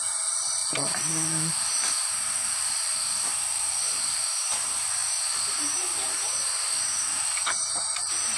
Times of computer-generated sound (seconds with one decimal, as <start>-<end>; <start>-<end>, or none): 0.0-8.4